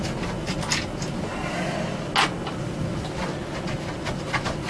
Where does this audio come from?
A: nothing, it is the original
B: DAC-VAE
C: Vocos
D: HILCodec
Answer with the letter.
A